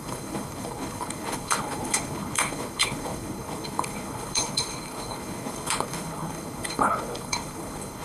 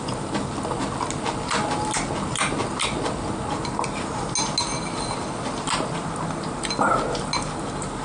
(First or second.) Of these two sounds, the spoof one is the first